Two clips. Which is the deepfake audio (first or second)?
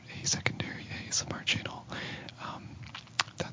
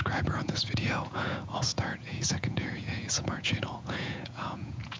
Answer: second